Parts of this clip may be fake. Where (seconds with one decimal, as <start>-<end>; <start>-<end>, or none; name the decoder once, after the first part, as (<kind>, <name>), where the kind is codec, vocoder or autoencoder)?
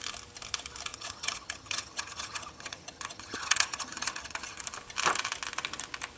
0.9-4.6 (vocoder, HiFi-GAN)